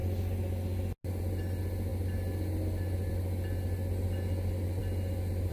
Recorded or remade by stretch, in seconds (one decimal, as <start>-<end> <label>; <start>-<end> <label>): 0.0-5.5 recorded